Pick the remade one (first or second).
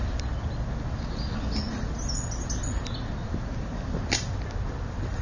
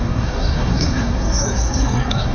second